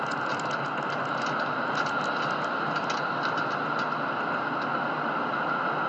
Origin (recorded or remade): recorded